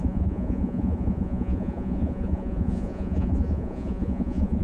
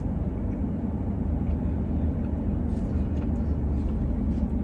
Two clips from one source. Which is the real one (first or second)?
second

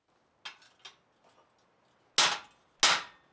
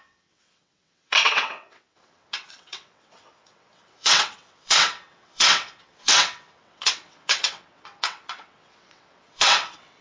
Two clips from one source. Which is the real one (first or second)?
first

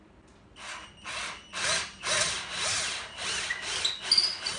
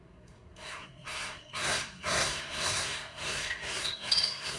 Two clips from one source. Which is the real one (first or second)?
first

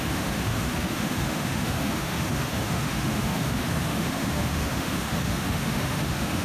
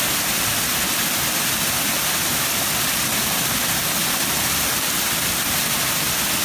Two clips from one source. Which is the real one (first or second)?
second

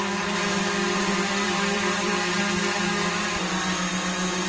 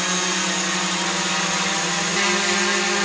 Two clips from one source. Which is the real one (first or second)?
second